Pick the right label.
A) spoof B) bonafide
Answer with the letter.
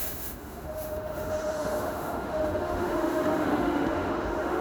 A